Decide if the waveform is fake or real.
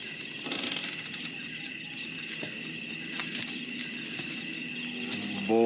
real